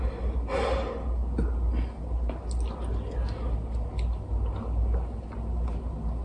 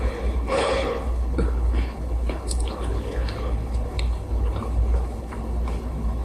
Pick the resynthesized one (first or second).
second